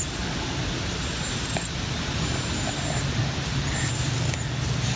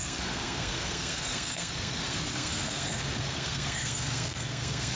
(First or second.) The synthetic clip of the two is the second